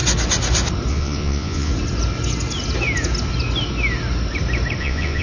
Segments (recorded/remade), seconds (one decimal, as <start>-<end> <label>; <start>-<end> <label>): 0.0-0.9 recorded; 0.9-1.7 remade; 1.7-4.8 recorded; 4.8-5.2 remade